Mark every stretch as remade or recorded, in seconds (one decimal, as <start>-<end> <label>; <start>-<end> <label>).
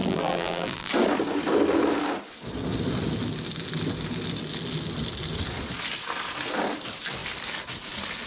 0.0-0.9 remade; 0.9-8.3 recorded